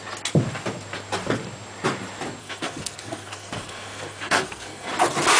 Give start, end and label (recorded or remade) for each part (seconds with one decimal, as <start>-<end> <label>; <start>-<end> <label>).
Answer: 0.0-2.4 recorded; 2.4-4.9 remade; 4.9-5.4 recorded